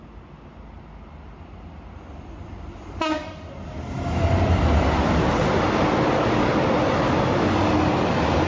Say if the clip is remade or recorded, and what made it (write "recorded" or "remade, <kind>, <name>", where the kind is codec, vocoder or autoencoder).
recorded